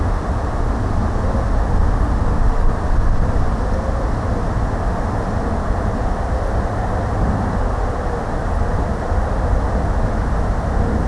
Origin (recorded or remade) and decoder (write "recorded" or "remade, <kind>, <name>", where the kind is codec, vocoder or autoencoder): recorded